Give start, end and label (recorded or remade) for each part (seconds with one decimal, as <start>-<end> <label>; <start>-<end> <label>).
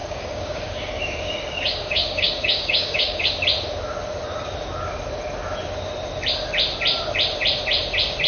0.0-3.3 remade; 3.3-8.3 recorded